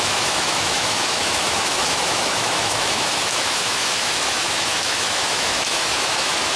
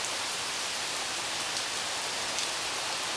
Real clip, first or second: second